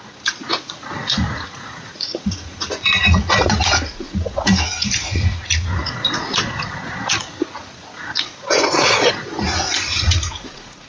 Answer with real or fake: fake